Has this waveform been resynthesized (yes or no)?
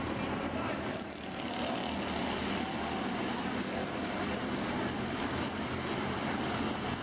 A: no